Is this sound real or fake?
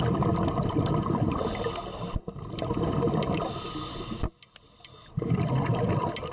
real